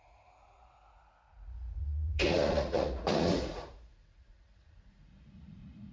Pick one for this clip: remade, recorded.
remade